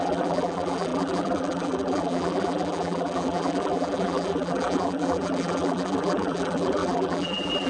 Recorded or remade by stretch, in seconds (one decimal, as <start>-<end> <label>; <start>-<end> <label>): 0.0-7.7 remade